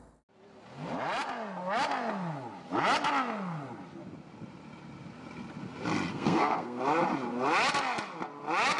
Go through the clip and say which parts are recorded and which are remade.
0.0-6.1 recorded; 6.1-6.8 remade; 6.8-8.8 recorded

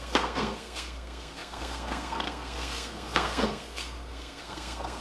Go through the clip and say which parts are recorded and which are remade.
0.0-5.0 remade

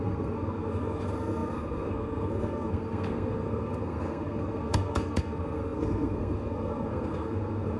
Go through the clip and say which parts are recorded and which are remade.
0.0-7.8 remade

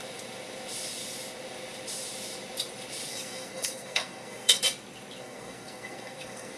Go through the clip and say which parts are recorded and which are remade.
0.0-3.1 recorded; 3.1-4.6 remade; 4.6-5.2 recorded; 5.2-6.6 remade

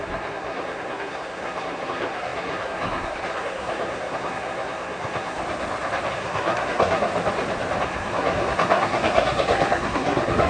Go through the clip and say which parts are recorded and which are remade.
0.0-5.4 remade; 5.4-6.1 recorded; 6.1-7.1 remade; 7.1-7.8 recorded; 7.8-10.5 remade

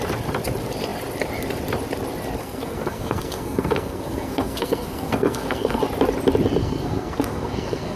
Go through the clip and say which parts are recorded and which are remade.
0.0-2.4 recorded; 2.4-5.8 remade; 5.8-6.6 recorded; 6.6-8.0 remade

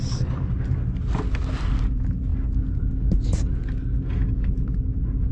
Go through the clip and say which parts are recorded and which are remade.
0.0-5.3 recorded